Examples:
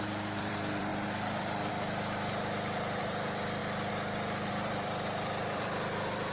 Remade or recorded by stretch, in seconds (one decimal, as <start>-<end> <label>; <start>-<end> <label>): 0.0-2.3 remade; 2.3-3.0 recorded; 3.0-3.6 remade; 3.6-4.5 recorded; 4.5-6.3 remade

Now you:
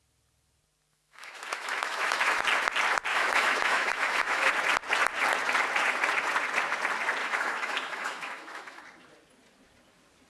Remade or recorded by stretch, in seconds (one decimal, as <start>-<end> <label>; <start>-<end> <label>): 0.0-0.9 recorded; 0.9-2.4 remade; 2.4-3.1 recorded; 3.1-4.5 remade; 4.5-7.2 recorded; 7.2-8.8 remade; 8.8-10.3 recorded

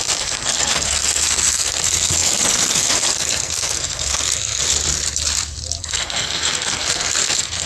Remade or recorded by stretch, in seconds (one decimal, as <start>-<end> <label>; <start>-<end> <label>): 0.0-4.6 remade; 4.6-5.8 recorded; 5.8-7.7 remade

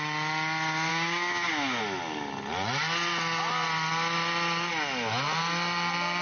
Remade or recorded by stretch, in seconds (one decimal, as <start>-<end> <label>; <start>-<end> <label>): 0.0-0.9 recorded; 0.9-1.8 remade; 1.8-6.2 recorded

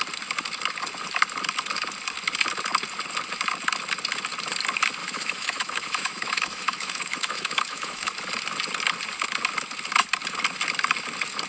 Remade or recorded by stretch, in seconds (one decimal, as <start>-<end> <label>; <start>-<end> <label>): 0.0-5.0 recorded; 5.0-8.1 remade; 8.1-11.5 recorded